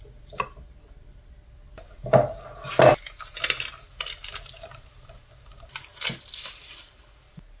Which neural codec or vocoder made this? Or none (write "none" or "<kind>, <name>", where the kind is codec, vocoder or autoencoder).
none